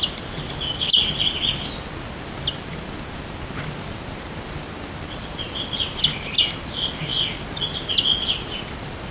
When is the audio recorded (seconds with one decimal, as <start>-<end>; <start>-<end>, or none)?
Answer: 0.0-9.1